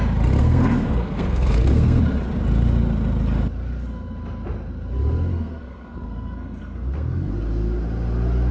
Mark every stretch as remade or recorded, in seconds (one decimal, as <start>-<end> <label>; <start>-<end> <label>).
0.0-0.4 recorded; 0.4-2.0 remade; 2.0-5.3 recorded; 5.3-7.3 remade; 7.3-8.5 recorded